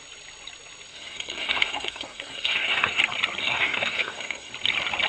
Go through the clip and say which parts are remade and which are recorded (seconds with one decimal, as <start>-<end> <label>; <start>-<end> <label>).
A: 0.0-0.9 recorded; 0.9-3.0 remade; 3.0-3.4 recorded; 3.4-4.5 remade; 4.5-5.1 recorded